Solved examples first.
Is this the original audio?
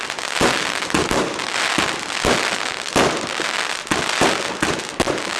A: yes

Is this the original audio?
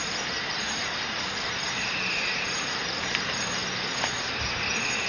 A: no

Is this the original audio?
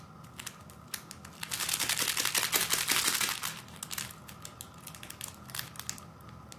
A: yes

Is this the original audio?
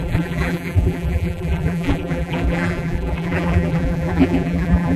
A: no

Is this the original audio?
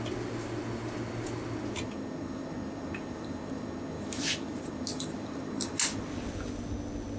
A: yes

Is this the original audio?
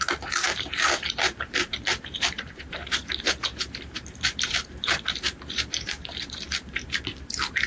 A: no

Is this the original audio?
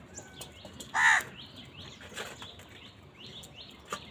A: yes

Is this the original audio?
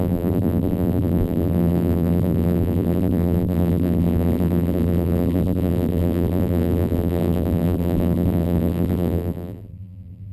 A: no